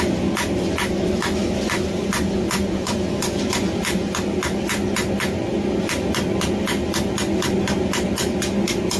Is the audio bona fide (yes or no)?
yes